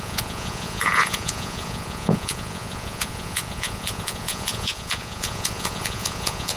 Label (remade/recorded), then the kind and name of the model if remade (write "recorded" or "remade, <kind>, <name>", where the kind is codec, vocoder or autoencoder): remade, vocoder, Vocos